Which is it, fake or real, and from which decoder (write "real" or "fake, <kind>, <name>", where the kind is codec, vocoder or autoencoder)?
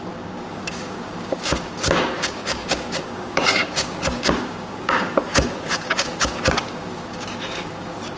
fake, codec, DAC